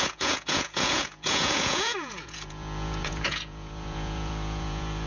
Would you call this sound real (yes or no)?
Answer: no